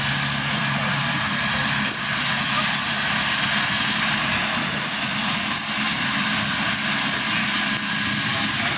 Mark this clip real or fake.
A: real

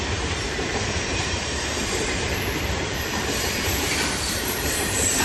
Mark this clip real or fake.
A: fake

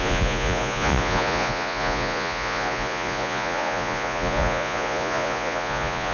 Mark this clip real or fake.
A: fake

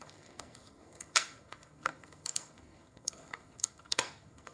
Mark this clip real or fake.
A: fake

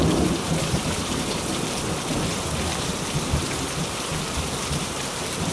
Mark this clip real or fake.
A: fake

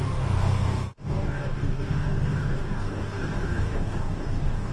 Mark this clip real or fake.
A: fake